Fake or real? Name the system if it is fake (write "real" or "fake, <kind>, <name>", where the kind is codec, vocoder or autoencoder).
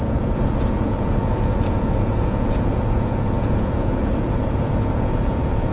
fake, vocoder, Vocos